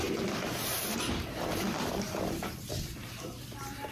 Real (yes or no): no